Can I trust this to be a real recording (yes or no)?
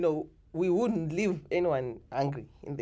yes